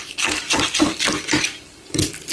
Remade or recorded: remade